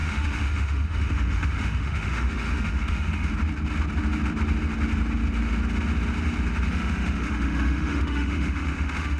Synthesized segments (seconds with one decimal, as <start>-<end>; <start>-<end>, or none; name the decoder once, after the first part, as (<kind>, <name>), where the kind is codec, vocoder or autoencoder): 0.0-3.3 (autoencoder, DAC-VAE); 6.7-9.2